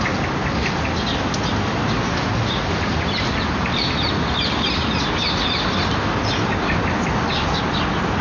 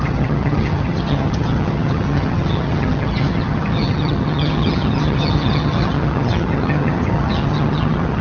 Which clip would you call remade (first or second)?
second